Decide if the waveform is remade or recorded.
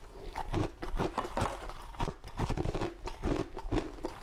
remade